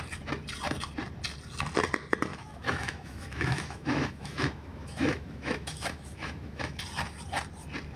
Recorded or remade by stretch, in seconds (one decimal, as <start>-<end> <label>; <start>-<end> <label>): 0.0-2.3 recorded; 2.3-6.8 remade; 6.8-8.0 recorded